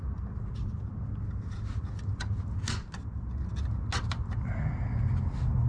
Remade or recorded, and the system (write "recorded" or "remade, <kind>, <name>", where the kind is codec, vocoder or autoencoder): recorded